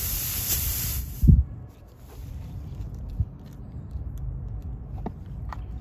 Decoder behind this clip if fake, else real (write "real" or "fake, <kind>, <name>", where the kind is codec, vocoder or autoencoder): fake, vocoder, BigVGAN v2